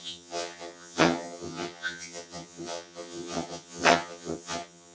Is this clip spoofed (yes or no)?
yes